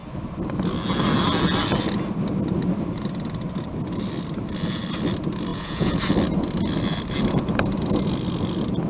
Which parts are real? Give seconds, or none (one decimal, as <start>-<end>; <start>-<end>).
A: 0.0-5.5; 6.0-8.9